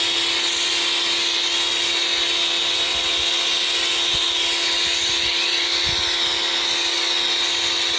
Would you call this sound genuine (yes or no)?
yes